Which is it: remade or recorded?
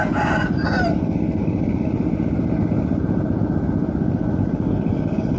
recorded